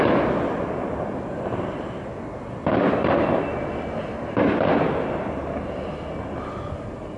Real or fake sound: real